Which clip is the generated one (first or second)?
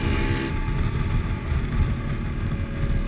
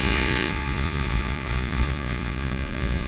second